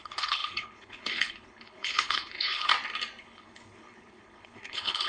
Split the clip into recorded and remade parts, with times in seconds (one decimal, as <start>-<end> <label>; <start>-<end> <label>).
0.0-2.7 remade; 2.7-3.2 recorded; 3.2-5.1 remade